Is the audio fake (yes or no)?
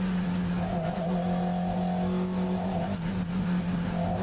no